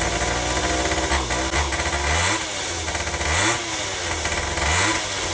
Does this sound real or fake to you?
real